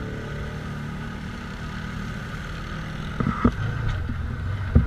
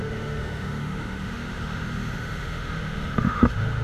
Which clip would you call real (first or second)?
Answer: first